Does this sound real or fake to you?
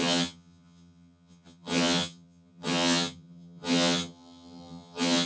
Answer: fake